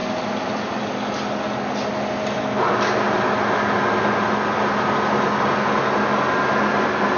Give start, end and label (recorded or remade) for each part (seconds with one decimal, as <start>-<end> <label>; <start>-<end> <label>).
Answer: 0.0-7.2 recorded